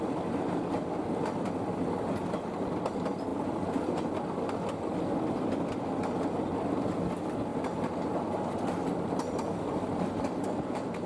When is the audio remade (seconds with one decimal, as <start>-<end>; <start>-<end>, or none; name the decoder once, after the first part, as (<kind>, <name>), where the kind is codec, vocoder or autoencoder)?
none